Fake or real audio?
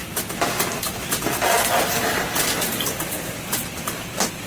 real